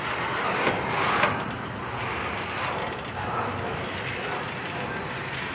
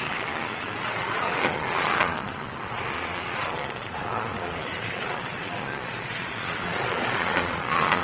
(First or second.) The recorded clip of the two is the first